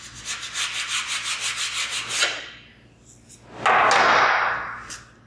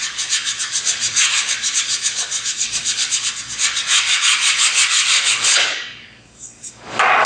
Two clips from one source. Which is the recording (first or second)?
first